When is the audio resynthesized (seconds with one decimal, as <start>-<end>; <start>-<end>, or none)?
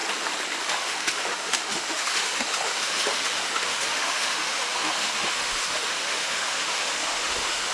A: 0.7-7.7